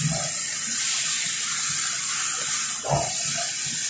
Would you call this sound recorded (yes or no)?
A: yes